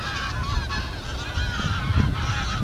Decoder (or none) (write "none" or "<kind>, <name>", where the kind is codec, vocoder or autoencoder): none